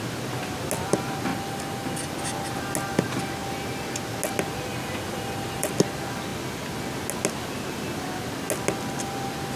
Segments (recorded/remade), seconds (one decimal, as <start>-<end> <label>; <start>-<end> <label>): 0.0-1.3 recorded; 1.3-2.1 remade; 2.1-4.7 recorded; 4.7-5.7 remade; 5.7-9.6 recorded